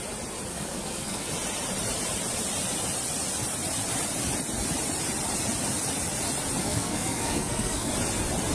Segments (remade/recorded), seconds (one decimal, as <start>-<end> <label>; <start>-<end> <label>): 0.0-0.5 recorded; 0.5-1.3 remade; 1.3-6.6 recorded; 6.6-7.9 remade; 7.9-8.5 recorded